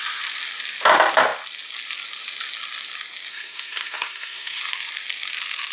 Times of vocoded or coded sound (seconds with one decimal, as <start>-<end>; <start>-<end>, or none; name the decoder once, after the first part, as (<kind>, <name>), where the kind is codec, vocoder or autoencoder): 3.3-4.6 (codec, SNAC)